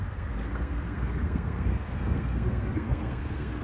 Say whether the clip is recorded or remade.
remade